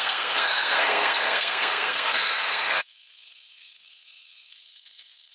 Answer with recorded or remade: remade